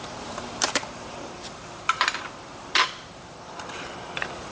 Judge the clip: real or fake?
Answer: fake